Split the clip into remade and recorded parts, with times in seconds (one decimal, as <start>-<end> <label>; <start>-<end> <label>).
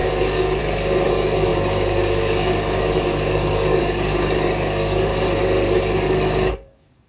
0.0-5.1 remade; 5.1-5.8 recorded; 5.8-7.1 remade